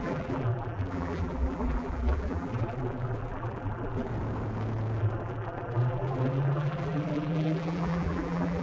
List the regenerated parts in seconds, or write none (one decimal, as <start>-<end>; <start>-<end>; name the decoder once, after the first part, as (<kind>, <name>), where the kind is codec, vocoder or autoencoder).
0.0-4.1 (vocoder, BigVGAN v2); 5.0-8.6